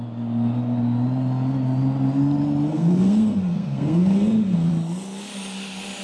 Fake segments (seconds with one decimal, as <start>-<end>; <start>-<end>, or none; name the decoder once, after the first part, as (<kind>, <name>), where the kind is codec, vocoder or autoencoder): 2.7-4.7 (codec, SNAC)